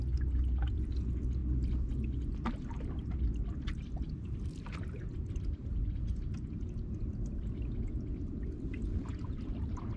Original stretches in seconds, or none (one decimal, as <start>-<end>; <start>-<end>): 0.0-10.0